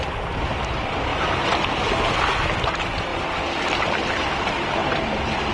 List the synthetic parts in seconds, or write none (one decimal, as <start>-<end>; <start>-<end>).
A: 1.1-1.7; 3.1-4.1; 4.8-5.5